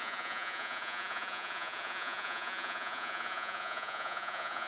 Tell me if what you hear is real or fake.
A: fake